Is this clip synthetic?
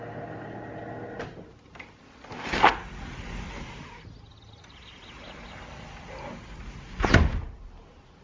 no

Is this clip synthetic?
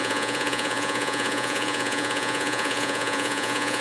yes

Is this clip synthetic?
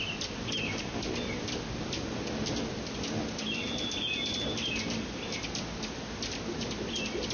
no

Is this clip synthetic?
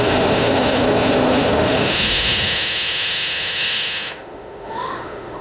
yes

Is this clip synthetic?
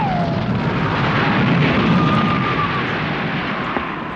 no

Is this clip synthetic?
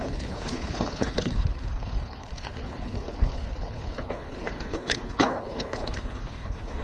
yes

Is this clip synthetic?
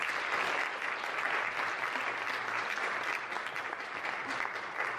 no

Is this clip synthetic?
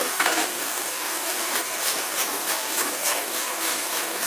yes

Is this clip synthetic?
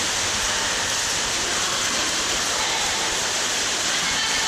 no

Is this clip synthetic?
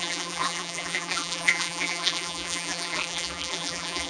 yes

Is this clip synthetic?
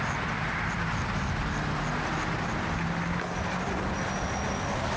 no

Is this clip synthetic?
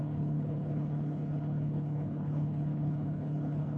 yes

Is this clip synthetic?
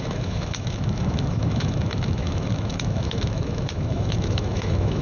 yes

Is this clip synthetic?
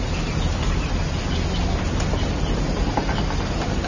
no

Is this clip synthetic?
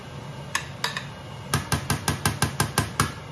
no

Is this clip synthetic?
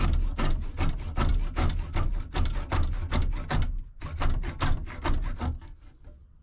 no